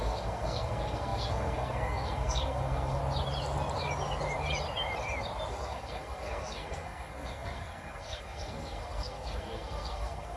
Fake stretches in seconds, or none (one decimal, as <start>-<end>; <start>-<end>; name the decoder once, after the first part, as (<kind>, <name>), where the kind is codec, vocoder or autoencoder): 0.0-3.0 (codec, SNAC); 5.5-10.4